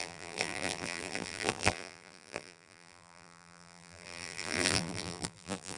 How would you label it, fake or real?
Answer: fake